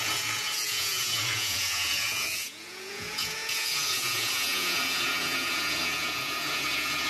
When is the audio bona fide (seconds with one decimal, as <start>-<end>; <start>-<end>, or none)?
none